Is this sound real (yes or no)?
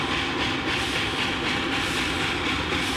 yes